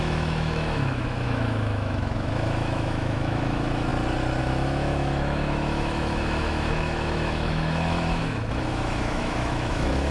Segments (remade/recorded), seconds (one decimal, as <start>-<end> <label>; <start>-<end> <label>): 0.0-3.9 remade; 3.9-4.4 recorded; 4.4-10.1 remade